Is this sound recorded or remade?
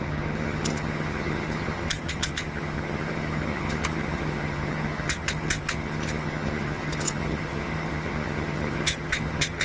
remade